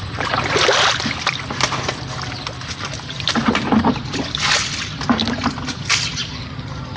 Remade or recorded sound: recorded